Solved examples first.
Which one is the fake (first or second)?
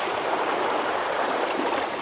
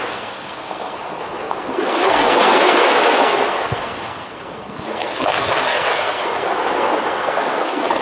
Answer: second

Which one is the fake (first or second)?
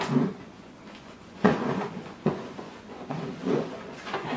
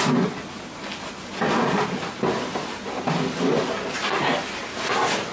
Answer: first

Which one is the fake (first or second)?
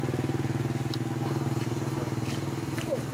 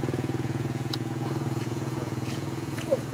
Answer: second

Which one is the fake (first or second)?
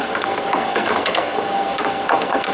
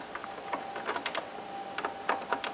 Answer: first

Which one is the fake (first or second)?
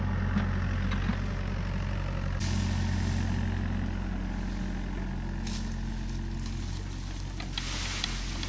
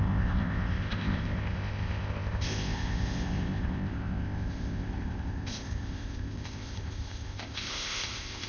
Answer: second